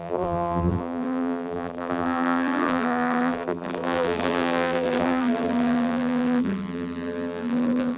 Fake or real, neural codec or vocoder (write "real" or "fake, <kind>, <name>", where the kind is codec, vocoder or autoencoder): fake, vocoder, BigVGAN v2